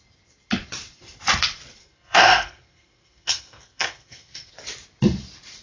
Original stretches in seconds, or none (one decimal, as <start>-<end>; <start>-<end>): 0.0-1.8; 4.5-5.6